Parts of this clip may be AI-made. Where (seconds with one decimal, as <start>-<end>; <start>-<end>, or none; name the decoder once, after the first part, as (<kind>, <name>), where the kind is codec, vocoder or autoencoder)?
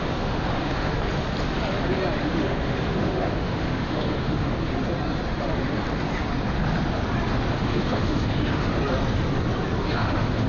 0.0-0.9 (autoencoder, DAC-VAE); 2.2-4.7; 7.5-8.8; 9.9-10.5